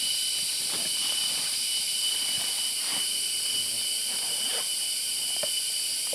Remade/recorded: recorded